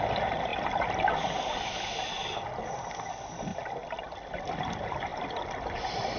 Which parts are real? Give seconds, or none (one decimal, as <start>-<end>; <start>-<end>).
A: 0.0-6.2